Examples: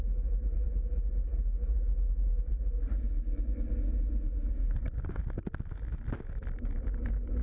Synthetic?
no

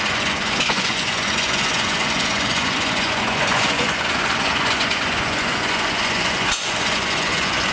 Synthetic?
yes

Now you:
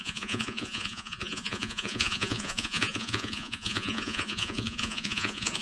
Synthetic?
yes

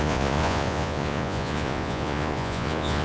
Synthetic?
yes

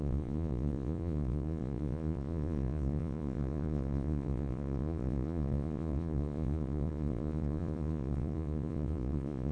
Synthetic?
yes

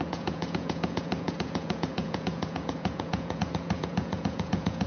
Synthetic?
yes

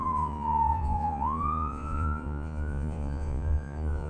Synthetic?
yes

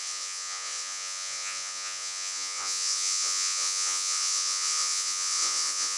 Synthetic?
yes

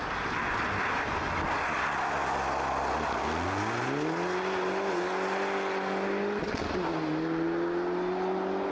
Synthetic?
no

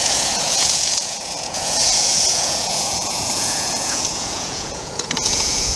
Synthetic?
yes